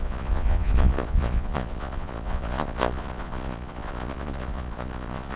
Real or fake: fake